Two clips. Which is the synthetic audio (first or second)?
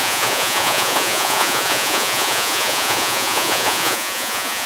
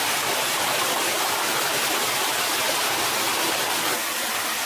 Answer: first